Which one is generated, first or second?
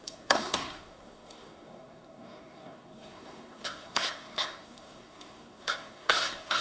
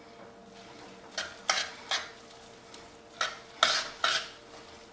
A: first